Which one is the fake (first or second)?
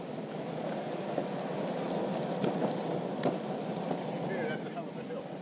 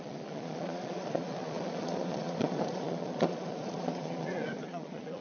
second